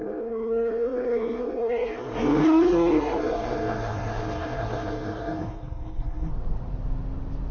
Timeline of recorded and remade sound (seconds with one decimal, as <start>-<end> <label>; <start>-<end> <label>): 0.0-6.3 remade; 6.3-7.5 recorded